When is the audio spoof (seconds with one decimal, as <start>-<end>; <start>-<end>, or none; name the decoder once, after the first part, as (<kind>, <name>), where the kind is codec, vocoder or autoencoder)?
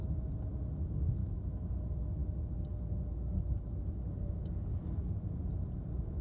1.2-1.7 (autoencoder, DAC-VAE)